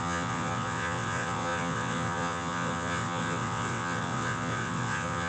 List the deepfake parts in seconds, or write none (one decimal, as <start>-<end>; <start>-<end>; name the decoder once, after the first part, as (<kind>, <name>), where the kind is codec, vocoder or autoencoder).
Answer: 0.0-5.3 (vocoder, WaveNeXt)